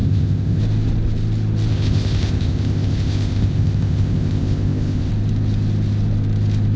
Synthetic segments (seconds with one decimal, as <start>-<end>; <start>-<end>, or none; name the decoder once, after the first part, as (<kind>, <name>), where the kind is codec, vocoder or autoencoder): 0.0-0.6 (codec, ZipCodec); 1.7-5.1